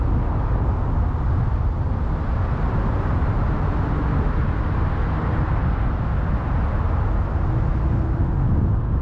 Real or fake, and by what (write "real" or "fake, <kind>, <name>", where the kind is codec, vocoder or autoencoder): real